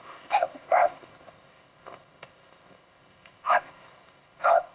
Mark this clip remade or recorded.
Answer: remade